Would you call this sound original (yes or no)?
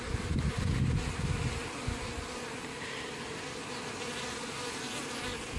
yes